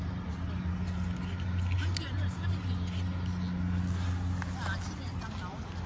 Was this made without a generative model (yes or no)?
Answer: yes